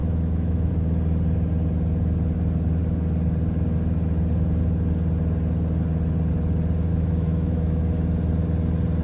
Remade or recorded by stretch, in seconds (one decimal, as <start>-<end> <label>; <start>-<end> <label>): 0.0-0.7 remade; 0.7-6.9 recorded; 6.9-7.8 remade; 7.8-9.0 recorded